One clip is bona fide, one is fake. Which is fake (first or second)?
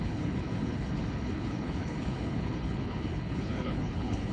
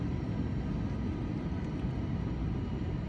first